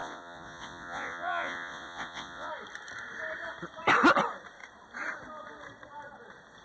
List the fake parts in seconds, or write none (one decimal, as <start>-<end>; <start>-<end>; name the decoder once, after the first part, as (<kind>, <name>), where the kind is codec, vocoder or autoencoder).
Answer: 0.0-2.5 (vocoder, Vocos)